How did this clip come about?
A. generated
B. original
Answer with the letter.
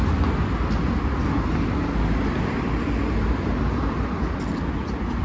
B